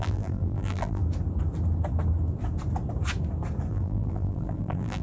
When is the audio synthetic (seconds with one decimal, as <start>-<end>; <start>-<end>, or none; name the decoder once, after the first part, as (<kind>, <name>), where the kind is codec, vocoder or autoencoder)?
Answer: 0.0-1.0 (vocoder, BigVGAN v2); 3.7-5.0